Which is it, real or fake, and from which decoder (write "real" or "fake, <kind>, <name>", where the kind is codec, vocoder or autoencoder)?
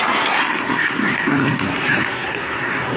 fake, codec, SNAC